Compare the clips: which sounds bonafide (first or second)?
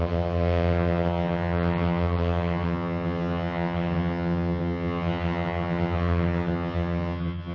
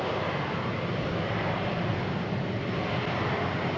second